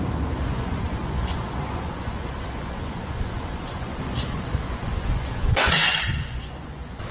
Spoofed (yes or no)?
yes